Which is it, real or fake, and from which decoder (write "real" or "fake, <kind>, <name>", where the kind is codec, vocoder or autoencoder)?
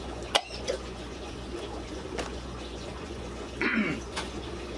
fake, vocoder, Vocos